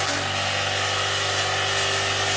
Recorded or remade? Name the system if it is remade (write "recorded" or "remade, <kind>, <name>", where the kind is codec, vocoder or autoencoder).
recorded